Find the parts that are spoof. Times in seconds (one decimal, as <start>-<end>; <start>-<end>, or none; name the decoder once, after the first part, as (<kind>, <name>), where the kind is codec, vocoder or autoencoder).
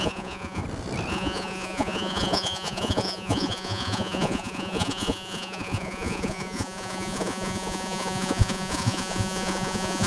0.0-0.6 (vocoder, Vocos); 1.1-10.1